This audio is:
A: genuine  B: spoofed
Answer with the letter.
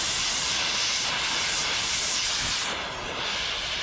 A